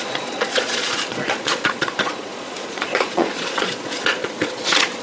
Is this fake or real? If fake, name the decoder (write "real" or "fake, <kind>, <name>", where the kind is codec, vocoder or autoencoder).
fake, vocoder, Vocos